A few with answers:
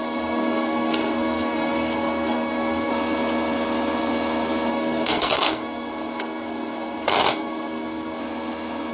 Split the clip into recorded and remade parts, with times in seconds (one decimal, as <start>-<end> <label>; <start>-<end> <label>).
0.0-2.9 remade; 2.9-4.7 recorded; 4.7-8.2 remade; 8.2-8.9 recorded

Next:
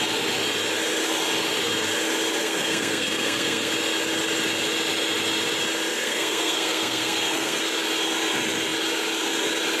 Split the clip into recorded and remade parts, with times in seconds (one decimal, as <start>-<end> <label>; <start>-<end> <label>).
0.0-2.4 recorded; 2.4-3.7 remade; 3.7-5.9 recorded; 5.9-7.6 remade; 7.6-9.8 recorded

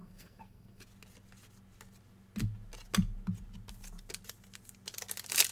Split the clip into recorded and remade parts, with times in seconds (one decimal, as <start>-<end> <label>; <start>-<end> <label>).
0.0-0.8 remade; 0.8-5.5 recorded

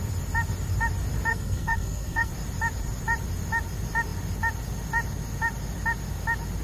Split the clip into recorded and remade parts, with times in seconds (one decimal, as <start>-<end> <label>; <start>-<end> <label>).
0.0-1.3 recorded; 1.3-2.3 remade; 2.3-6.6 recorded

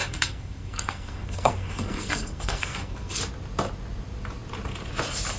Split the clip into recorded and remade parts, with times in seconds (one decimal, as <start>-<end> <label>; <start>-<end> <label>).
0.0-3.2 remade; 3.2-5.4 recorded